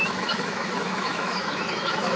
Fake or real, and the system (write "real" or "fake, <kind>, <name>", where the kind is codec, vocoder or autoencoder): fake, autoencoder, DAC-VAE